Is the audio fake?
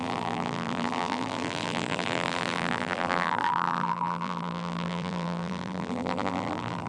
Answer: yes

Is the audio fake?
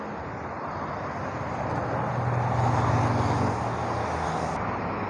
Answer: no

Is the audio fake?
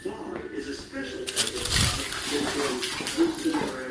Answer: no